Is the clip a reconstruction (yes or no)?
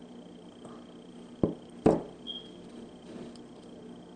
no